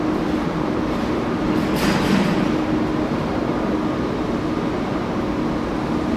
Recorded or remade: recorded